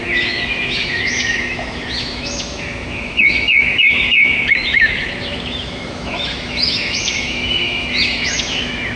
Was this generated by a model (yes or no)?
yes